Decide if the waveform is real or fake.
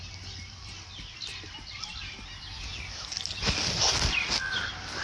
real